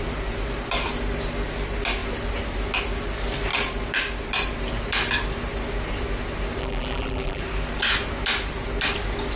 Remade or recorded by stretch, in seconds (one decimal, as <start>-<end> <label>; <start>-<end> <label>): 0.0-6.6 recorded; 6.6-7.4 remade; 7.4-9.4 recorded

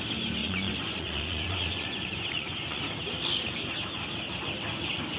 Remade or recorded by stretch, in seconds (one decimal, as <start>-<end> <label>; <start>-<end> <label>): 0.0-0.4 recorded; 0.4-2.8 remade; 2.8-5.2 recorded

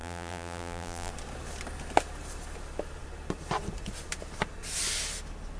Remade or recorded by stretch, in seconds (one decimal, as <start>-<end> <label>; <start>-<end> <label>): 0.0-1.1 remade; 1.1-5.6 recorded

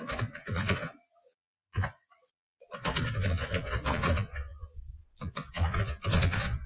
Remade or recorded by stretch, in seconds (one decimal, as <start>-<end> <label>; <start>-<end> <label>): 0.0-6.7 remade

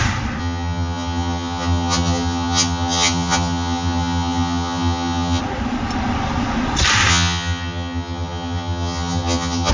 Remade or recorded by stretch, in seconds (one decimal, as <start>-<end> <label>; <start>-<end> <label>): 0.0-0.4 recorded; 0.4-5.4 remade; 5.4-7.1 recorded; 7.1-9.7 remade

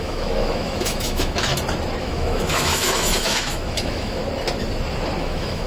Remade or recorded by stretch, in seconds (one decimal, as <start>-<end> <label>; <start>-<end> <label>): 0.0-1.5 remade; 1.5-2.0 recorded; 2.0-4.2 remade; 4.2-5.2 recorded; 5.2-5.7 remade